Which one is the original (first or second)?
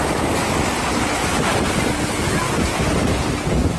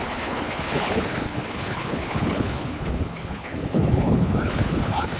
first